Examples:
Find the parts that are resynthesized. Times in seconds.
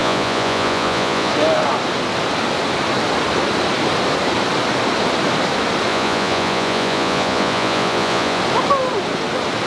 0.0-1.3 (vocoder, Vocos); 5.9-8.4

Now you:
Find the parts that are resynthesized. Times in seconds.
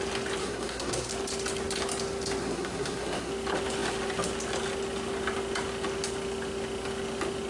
0.4-1.1 (codec, SNAC); 2.4-3.3